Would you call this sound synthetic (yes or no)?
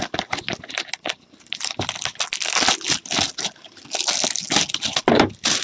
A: no